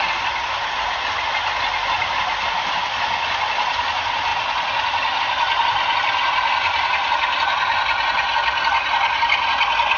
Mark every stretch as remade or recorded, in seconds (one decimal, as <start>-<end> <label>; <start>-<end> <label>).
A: 0.0-10.0 recorded